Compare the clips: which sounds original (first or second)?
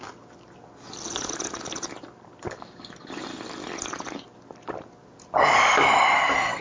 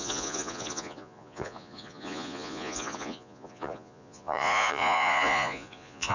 first